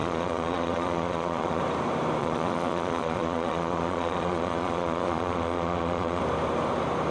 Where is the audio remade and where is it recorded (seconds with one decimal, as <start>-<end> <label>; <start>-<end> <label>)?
0.0-1.6 remade; 1.6-2.2 recorded; 2.2-6.2 remade; 6.2-7.1 recorded